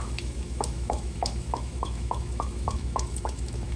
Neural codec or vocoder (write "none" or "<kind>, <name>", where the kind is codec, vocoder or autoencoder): autoencoder, DAC-VAE